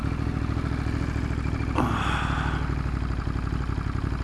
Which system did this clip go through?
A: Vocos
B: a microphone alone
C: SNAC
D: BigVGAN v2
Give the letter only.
B